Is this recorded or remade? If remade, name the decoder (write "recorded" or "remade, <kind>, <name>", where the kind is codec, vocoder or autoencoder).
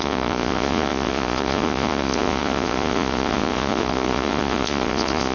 remade, vocoder, Vocos